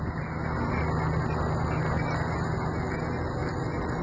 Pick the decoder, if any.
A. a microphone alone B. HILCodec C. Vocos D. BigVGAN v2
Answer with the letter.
A